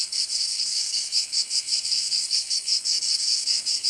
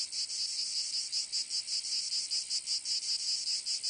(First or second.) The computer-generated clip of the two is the first